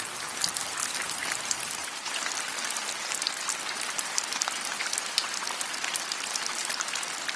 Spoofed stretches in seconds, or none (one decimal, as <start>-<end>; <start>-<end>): none